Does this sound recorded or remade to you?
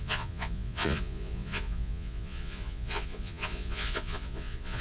remade